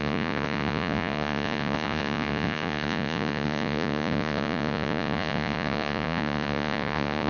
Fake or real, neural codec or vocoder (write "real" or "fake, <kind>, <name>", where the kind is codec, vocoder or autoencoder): fake, vocoder, Vocos